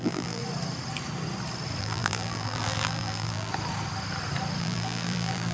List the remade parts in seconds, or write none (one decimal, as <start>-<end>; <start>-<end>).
0.0-0.4; 1.8-3.5; 4.6-5.5

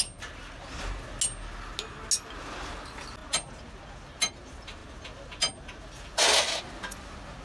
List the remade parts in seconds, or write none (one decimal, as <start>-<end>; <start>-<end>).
none

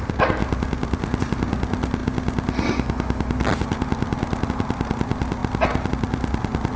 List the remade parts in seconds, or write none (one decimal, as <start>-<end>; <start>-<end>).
none

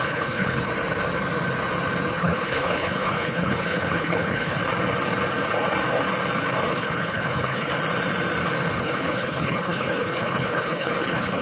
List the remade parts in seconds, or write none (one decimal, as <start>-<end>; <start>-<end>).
0.0-0.7; 2.1-4.6; 6.7-7.7; 8.7-11.4

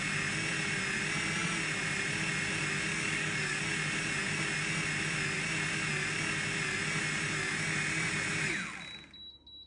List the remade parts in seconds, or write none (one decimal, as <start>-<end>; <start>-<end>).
2.9-3.6